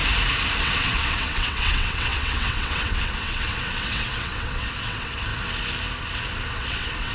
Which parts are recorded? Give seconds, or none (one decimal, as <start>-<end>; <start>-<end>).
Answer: 0.0-0.6; 5.3-6.5

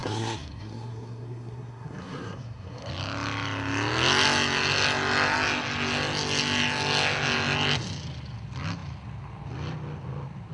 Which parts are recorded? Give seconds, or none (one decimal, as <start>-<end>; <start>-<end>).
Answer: 2.9-10.5

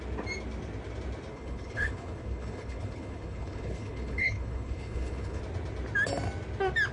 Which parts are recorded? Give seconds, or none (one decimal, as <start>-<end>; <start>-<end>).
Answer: 0.0-1.3; 5.4-6.9

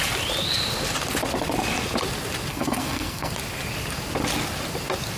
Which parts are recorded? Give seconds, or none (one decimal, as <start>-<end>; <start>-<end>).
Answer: 0.0-2.5; 3.3-5.2